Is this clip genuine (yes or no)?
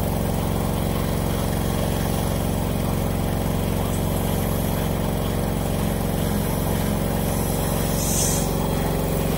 yes